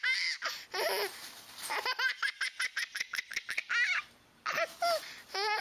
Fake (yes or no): no